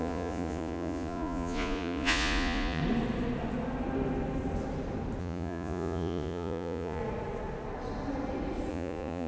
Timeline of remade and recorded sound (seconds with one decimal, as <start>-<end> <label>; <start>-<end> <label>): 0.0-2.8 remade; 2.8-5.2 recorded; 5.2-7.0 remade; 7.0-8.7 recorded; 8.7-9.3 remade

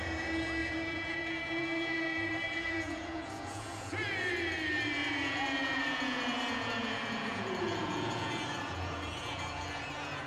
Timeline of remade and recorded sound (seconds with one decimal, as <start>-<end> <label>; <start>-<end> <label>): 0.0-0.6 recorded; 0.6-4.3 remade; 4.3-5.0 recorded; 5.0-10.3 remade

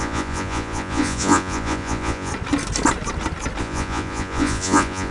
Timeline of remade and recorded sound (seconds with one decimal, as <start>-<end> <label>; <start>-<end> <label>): 0.0-2.3 remade; 2.3-3.6 recorded; 3.6-5.1 remade

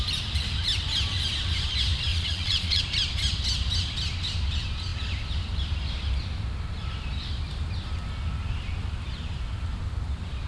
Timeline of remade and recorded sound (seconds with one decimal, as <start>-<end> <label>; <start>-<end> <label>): 0.0-2.1 recorded; 2.1-2.8 remade; 2.8-10.5 recorded